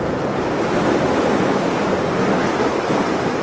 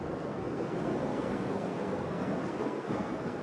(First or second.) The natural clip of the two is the first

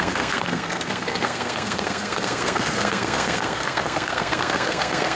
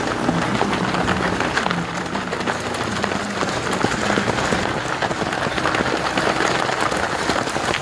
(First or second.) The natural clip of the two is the second